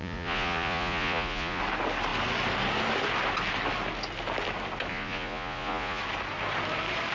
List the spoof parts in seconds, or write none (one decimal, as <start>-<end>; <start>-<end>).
0.0-1.6; 4.9-6.0